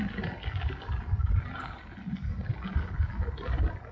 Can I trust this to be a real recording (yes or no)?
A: yes